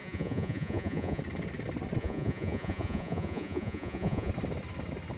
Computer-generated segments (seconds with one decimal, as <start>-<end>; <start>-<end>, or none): 0.0-1.2; 2.0-4.3